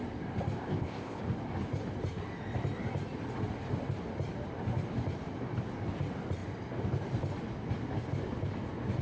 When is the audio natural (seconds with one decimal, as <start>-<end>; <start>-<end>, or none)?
0.0-0.6; 1.2-9.0